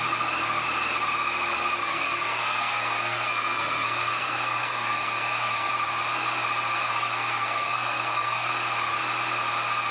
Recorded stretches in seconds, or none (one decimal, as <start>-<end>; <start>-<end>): 0.0-1.8; 5.7-6.7; 8.5-9.9